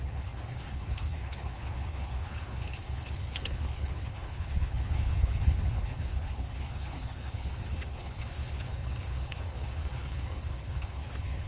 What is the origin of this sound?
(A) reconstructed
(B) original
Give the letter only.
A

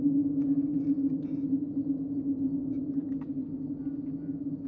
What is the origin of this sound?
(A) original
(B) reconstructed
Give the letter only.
A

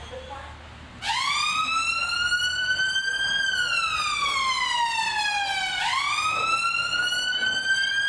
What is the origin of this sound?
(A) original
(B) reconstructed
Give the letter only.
A